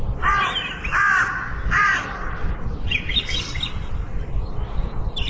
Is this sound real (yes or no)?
yes